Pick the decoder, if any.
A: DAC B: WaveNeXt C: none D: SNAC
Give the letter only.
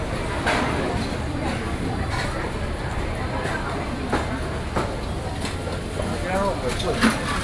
C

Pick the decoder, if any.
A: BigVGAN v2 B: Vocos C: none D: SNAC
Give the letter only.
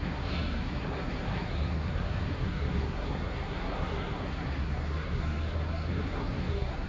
D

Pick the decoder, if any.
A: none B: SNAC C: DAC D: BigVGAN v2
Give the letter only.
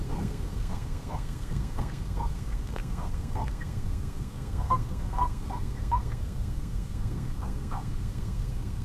B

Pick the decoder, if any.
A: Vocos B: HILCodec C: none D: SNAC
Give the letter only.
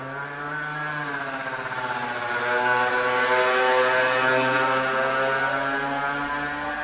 C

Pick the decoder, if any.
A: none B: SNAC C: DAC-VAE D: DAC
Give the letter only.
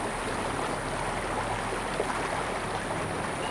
A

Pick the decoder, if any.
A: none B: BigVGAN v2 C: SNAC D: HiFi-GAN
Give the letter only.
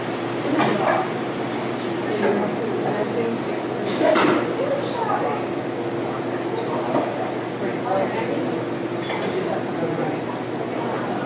A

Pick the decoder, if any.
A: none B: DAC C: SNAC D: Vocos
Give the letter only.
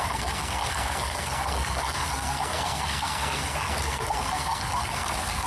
C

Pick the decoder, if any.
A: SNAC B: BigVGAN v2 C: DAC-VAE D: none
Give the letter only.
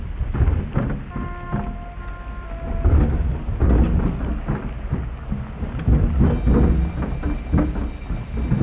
D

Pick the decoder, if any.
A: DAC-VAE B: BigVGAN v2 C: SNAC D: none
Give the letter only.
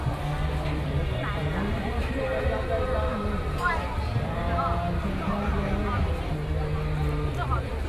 D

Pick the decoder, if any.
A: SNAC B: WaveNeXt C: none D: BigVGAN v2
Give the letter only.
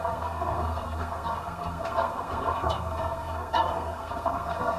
A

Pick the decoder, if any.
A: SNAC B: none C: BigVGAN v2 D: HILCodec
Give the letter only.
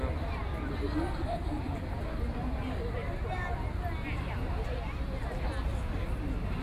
B